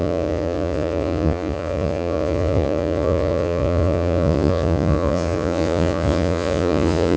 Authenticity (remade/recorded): remade